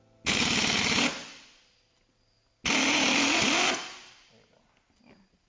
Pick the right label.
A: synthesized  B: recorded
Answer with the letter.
B